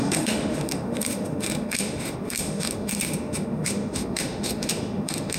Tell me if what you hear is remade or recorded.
remade